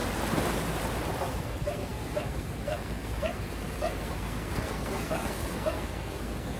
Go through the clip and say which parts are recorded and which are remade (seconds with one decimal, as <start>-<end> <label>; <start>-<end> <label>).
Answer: 0.0-1.2 recorded; 1.2-6.6 remade